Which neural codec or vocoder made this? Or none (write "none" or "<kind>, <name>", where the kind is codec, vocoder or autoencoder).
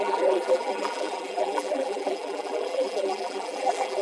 vocoder, BigVGAN v2